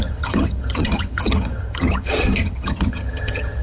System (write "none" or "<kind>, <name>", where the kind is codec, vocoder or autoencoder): vocoder, HiFi-GAN